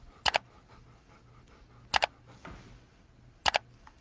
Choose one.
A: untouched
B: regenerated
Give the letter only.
A